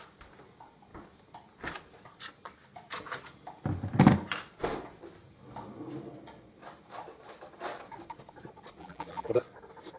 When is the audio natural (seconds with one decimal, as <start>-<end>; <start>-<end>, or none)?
0.0-8.8; 9.3-10.0